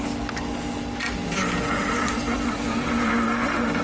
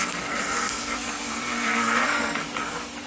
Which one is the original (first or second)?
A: first